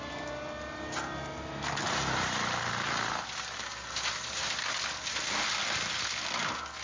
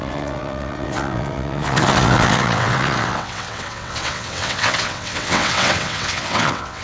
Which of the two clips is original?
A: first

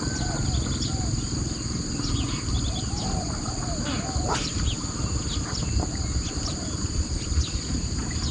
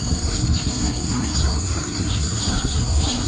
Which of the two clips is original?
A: first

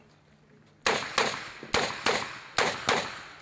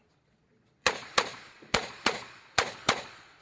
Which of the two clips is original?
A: first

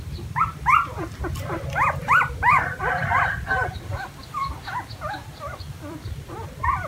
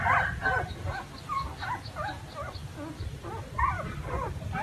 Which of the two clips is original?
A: second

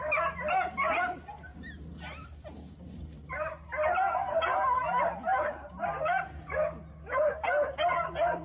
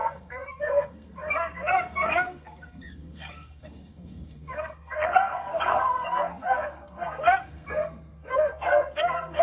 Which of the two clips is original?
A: first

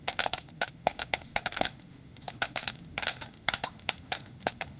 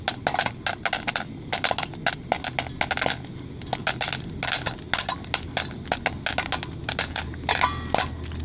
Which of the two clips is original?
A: second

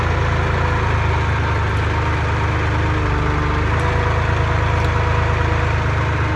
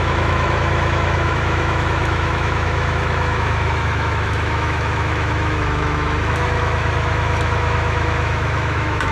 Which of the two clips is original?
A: first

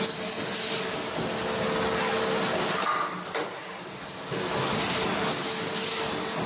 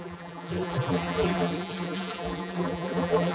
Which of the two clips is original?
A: first